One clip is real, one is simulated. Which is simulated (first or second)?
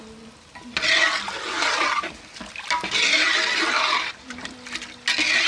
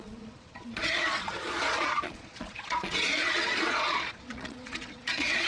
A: second